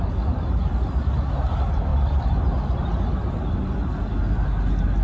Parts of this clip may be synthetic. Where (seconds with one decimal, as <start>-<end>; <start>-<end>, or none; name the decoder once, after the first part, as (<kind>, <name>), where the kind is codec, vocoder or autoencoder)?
none